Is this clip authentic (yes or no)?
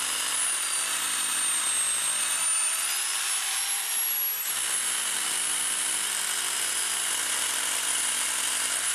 yes